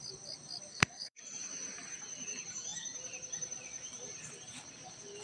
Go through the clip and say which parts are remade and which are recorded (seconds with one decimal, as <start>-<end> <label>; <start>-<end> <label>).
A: 0.0-0.7 recorded; 0.7-1.2 remade; 1.2-5.2 recorded

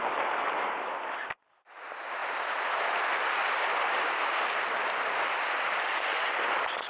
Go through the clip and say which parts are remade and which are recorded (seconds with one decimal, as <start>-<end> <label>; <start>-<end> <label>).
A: 0.0-6.9 recorded

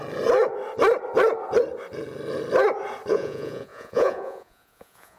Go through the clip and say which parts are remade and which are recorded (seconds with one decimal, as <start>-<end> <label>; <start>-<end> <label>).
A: 0.0-3.1 recorded; 3.1-5.2 remade

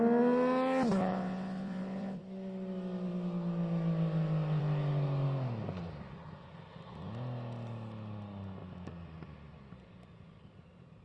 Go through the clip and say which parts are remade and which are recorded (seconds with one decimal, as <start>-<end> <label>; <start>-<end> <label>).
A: 0.0-1.0 recorded; 1.0-2.2 remade; 2.2-11.0 recorded

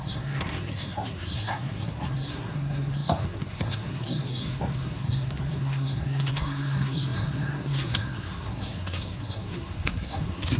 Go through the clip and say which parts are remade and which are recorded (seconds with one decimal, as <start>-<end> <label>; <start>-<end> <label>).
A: 0.0-10.6 remade

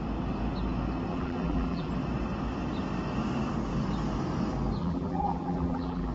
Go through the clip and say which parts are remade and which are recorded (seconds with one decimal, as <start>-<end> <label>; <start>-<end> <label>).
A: 0.0-1.1 recorded; 1.1-1.9 remade; 1.9-4.8 recorded; 4.8-6.1 remade

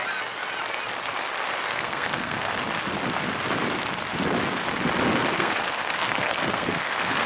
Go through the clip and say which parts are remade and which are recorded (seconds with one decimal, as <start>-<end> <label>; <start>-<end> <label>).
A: 0.0-1.7 recorded; 1.7-2.5 remade; 2.5-5.4 recorded; 5.4-7.3 remade

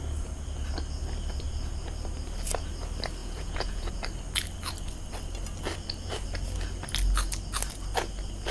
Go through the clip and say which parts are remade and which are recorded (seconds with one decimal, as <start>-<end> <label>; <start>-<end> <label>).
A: 0.0-3.2 recorded; 3.2-3.9 remade; 3.9-8.5 recorded